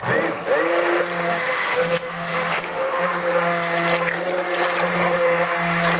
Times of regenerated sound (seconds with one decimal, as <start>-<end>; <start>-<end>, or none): 1.3-3.0